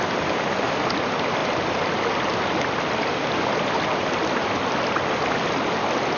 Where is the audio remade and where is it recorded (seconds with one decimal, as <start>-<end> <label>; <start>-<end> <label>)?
0.0-6.2 recorded